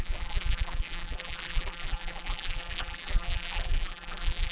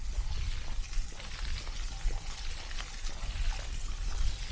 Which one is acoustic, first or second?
second